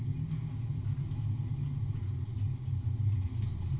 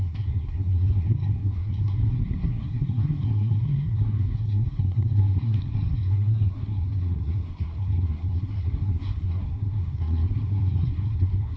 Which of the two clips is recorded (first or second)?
first